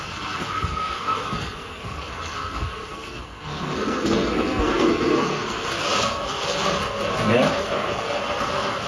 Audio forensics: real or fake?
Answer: fake